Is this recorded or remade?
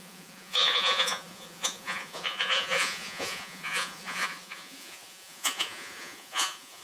remade